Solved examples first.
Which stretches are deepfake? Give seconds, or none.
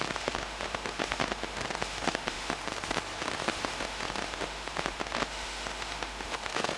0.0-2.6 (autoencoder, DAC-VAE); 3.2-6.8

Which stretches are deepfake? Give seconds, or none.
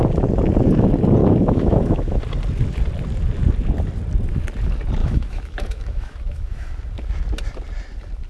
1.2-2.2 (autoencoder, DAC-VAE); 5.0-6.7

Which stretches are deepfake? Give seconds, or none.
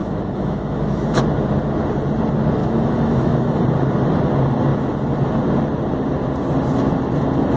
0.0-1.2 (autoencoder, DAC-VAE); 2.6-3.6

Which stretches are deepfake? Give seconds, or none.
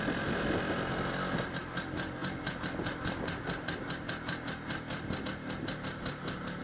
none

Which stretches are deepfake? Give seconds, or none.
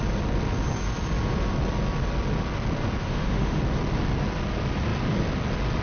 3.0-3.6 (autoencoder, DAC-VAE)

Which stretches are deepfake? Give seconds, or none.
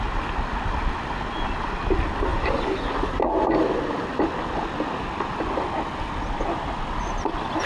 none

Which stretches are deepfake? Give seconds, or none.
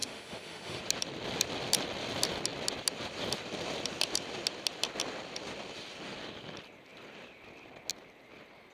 0.0-0.8 (autoencoder, DAC-VAE)